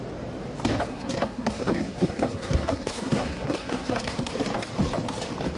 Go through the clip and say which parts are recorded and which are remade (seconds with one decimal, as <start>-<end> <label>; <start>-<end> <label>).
0.0-0.9 recorded; 0.9-4.3 remade; 4.3-5.6 recorded